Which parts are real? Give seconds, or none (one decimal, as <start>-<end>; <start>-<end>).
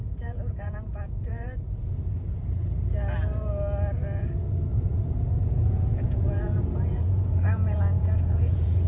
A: 1.8-4.7